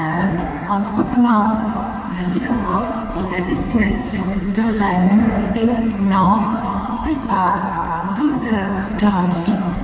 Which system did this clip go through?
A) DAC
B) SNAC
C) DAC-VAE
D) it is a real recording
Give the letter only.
B